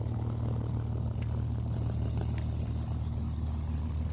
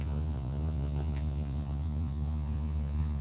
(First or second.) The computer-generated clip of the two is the second